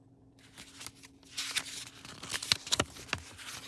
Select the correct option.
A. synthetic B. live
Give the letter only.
B